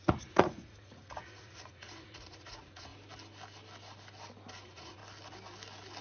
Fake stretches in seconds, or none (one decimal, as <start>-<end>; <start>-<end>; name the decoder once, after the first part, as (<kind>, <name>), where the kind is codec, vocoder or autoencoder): 0.0-2.9 (vocoder, Vocos); 4.5-5.0